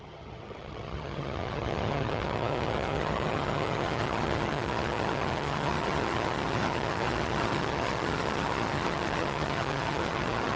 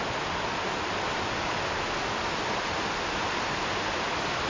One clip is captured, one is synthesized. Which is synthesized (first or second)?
first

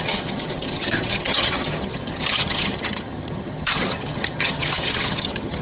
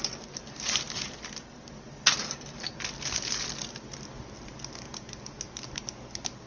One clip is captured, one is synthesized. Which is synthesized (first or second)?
first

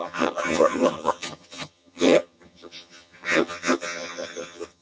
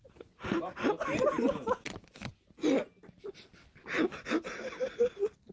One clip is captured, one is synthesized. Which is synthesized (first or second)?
first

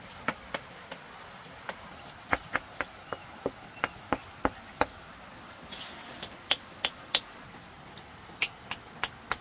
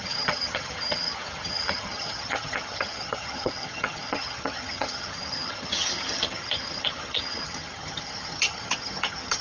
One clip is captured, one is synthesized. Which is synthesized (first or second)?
second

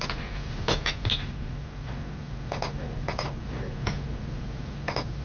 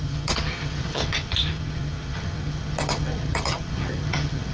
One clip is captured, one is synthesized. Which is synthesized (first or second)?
second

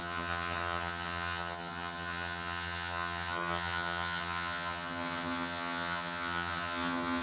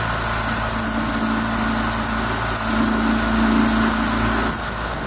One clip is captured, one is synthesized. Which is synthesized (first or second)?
first